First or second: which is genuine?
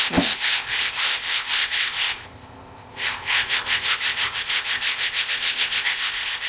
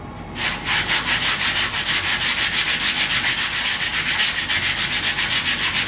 second